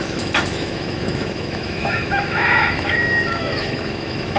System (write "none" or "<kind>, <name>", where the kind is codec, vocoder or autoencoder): autoencoder, DAC-VAE